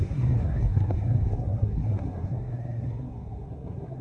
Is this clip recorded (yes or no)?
no